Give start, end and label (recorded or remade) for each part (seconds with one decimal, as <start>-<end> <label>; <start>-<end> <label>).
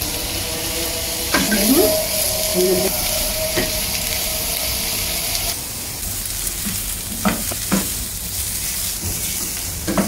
0.0-2.5 recorded; 2.5-3.5 remade; 3.5-10.1 recorded